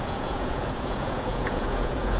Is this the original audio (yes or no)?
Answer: no